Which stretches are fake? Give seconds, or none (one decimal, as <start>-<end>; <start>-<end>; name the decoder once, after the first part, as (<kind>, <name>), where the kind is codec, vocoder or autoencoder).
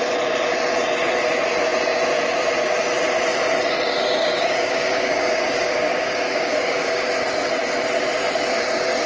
4.2-7.1 (codec, DAC)